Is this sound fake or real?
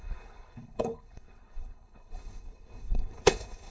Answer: fake